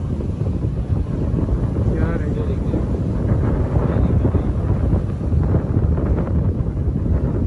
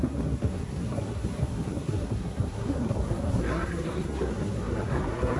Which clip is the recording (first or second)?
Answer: first